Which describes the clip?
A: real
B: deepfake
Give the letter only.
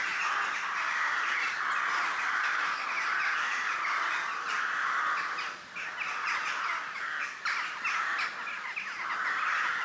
A